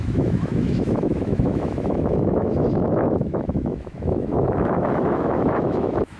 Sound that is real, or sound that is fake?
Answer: fake